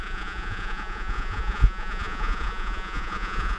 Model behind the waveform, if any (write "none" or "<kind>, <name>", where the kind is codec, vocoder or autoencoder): vocoder, Vocos